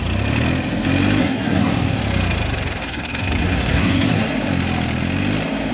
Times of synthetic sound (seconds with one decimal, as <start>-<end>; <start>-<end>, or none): 1.2-2.0; 2.8-4.3